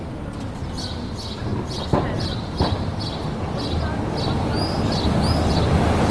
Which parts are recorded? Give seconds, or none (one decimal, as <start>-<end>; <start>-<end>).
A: 0.0-1.5; 3.0-6.1